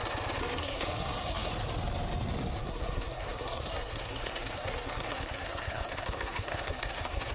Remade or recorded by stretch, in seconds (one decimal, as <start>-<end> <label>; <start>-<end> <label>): 0.0-0.4 recorded; 0.4-1.5 remade; 1.5-2.6 recorded; 2.6-7.3 remade